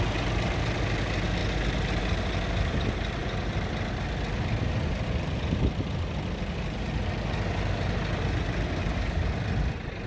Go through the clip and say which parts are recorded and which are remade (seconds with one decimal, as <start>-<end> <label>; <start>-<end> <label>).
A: 0.0-8.8 recorded; 8.8-9.3 remade; 9.3-10.1 recorded